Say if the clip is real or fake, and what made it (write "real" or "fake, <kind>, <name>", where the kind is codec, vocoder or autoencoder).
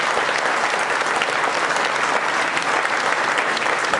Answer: real